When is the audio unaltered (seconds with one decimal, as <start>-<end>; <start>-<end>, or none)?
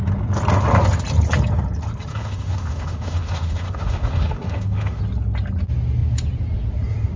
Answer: 0.0-2.1; 5.0-7.2